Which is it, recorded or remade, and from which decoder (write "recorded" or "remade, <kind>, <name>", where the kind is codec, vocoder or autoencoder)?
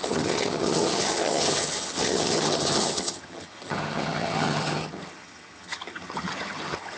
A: remade, vocoder, HiFi-GAN